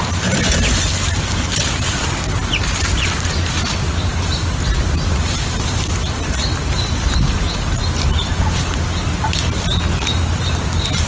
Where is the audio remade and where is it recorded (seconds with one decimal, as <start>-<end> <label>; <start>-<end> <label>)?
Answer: 0.0-11.1 recorded